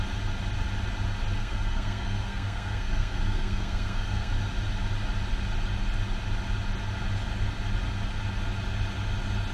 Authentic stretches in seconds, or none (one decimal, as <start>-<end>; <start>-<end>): 0.0-1.4; 4.3-9.5